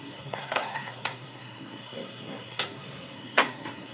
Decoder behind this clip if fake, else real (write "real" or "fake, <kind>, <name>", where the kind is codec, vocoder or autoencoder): fake, codec, SNAC